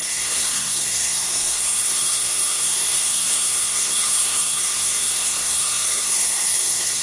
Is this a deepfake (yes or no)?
yes